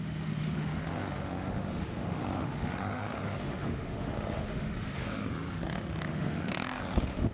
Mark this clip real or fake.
fake